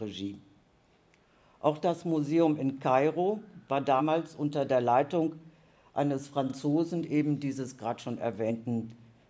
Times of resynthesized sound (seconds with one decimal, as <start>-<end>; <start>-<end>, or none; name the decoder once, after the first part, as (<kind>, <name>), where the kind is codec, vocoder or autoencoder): none